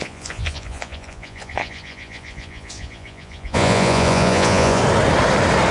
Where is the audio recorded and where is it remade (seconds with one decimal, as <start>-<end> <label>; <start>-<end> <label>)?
0.0-4.8 remade; 4.8-5.7 recorded